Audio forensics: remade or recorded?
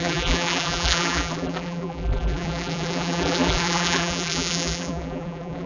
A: remade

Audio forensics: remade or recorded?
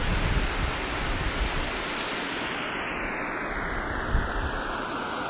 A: recorded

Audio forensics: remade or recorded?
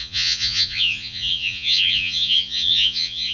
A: remade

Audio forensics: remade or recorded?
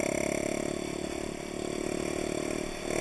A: recorded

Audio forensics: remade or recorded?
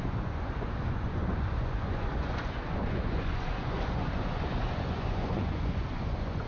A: remade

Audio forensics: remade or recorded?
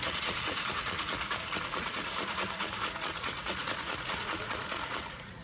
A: remade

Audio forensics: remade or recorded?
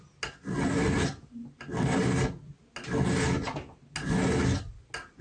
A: recorded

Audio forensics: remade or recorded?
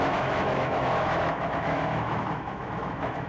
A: remade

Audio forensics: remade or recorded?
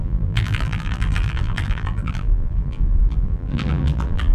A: remade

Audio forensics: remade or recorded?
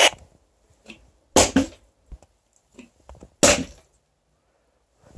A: recorded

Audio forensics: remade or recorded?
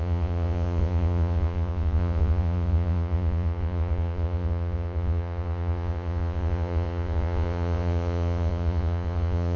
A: remade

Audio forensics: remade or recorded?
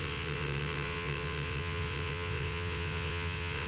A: remade